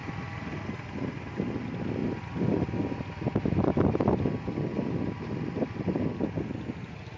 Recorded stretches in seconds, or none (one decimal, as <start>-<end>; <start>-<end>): 0.0-7.2

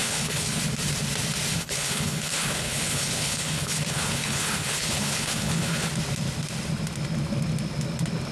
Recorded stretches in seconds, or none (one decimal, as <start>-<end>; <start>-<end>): 0.6-1.5; 5.9-8.3

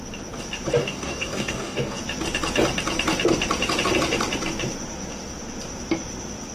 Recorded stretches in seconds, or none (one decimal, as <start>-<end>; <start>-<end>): 0.0-0.8; 2.0-6.5

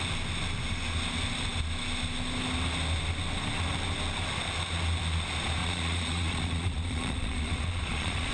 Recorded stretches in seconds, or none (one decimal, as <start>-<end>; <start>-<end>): 0.0-5.6

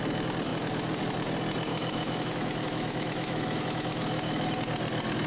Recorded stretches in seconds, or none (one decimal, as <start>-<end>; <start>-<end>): 0.0-1.7; 4.6-5.3

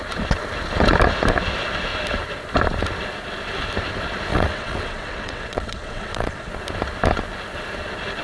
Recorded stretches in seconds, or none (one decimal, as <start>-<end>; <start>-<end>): 0.0-4.3; 6.5-8.2

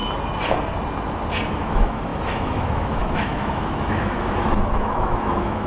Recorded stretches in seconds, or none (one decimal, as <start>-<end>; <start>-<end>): 0.0-1.5